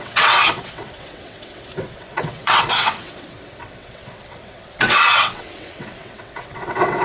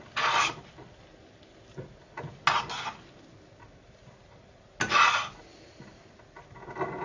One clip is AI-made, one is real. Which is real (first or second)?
second